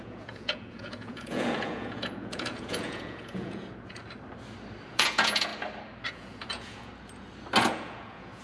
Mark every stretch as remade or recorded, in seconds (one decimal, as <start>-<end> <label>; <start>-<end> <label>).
0.0-4.0 remade; 4.0-4.9 recorded; 4.9-5.5 remade; 5.5-6.1 recorded; 6.1-6.9 remade; 6.9-7.6 recorded; 7.6-8.4 remade